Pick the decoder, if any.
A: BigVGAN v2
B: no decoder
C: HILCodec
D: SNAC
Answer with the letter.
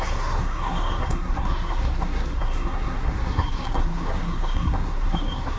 D